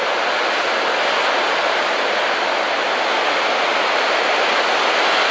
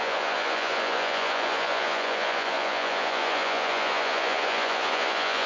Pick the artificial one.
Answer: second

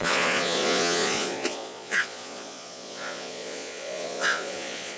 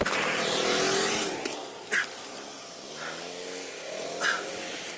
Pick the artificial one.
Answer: first